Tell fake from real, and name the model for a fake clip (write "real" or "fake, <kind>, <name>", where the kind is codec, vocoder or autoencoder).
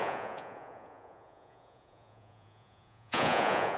fake, vocoder, Vocos